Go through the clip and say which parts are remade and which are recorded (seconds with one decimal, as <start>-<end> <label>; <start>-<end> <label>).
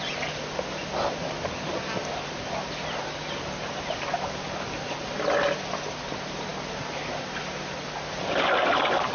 0.0-9.1 recorded